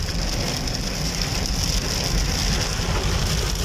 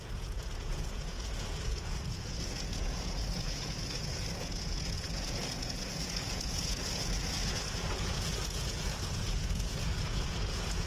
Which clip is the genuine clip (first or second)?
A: first